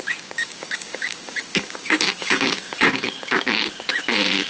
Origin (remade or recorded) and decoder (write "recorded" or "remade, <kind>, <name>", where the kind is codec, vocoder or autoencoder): remade, codec, DAC